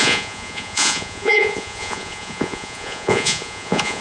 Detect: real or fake fake